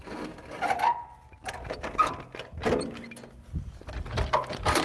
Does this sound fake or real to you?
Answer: real